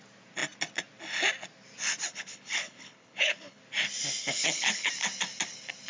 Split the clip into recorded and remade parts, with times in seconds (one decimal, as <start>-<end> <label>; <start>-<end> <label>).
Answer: 0.0-2.1 recorded; 2.1-3.6 remade; 3.6-4.2 recorded; 4.2-4.9 remade; 4.9-5.9 recorded